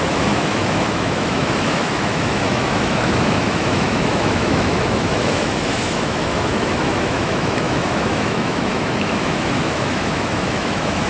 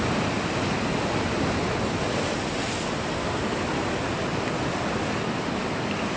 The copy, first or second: first